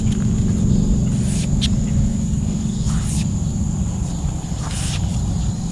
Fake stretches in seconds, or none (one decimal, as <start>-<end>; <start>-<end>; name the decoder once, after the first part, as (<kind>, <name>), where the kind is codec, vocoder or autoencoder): 2.1-2.9 (codec, DAC); 5.1-5.7